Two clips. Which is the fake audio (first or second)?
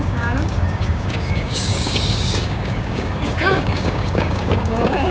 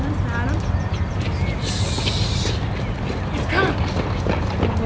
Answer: first